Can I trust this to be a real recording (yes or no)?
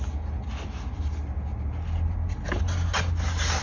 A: yes